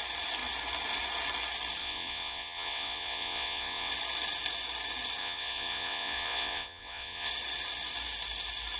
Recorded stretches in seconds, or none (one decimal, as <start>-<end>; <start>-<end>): 0.0-1.8; 3.9-5.2; 7.3-8.8